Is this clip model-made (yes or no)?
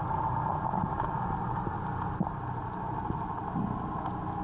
no